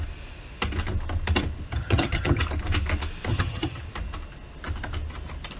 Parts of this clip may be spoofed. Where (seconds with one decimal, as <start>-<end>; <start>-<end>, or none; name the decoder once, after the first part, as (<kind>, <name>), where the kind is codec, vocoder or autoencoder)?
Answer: 1.7-2.4 (vocoder, HiFi-GAN); 3.3-3.8